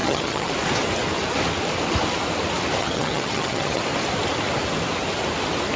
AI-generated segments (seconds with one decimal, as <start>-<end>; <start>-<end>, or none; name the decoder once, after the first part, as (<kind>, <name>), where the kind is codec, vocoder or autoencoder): 0.0-0.5 (vocoder, HiFi-GAN); 2.8-3.8